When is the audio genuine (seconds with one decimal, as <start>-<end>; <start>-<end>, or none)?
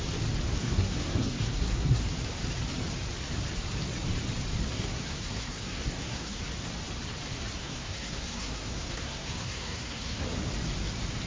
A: 0.0-0.6; 2.0-4.7; 6.4-7.6; 10.2-11.3